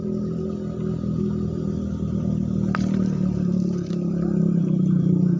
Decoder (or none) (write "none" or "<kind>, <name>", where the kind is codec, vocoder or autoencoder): none